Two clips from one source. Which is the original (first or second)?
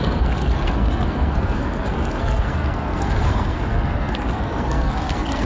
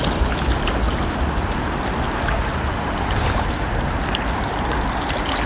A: second